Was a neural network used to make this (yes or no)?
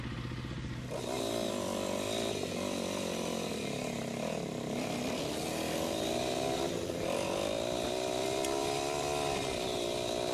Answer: no